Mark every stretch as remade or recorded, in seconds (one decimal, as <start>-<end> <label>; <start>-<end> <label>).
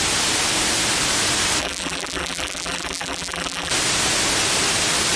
0.0-1.6 recorded; 1.6-3.7 remade; 3.7-5.2 recorded